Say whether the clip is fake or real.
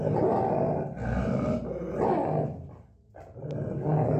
real